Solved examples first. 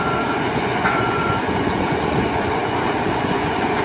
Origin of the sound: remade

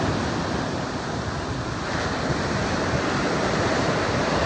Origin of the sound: recorded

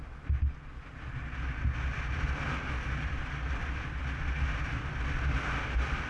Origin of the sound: recorded